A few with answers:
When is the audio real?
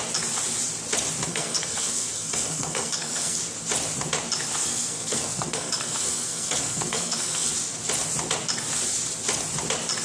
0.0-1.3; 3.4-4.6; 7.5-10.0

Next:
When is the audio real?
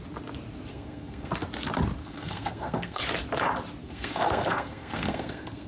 0.0-0.7; 1.3-2.0; 3.0-3.8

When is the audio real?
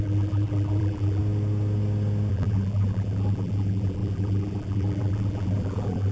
1.2-2.3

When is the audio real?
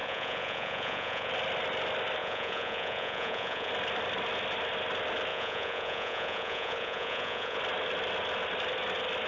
1.3-2.2; 3.7-5.3; 7.6-9.3